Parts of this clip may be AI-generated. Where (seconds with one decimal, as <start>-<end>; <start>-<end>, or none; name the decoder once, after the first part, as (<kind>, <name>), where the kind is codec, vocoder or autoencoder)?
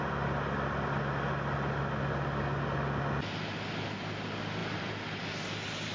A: none